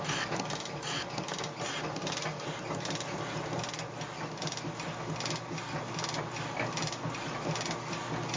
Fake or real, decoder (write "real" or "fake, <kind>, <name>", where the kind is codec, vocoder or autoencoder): real